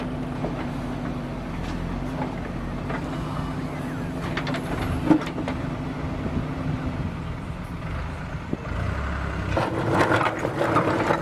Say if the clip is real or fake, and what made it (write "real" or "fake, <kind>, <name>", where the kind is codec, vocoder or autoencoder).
real